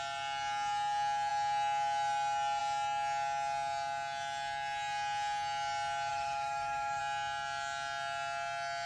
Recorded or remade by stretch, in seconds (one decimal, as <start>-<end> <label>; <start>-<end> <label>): 0.0-6.1 recorded; 6.1-7.0 remade; 7.0-8.9 recorded